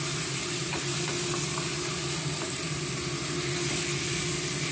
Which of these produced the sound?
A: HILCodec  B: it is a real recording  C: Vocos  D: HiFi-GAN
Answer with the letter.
B